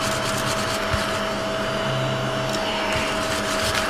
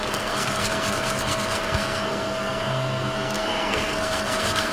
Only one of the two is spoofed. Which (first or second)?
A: second